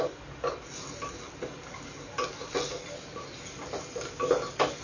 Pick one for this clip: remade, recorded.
recorded